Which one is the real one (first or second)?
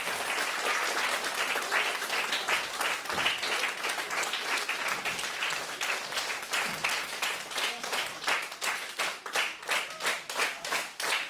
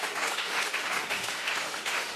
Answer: first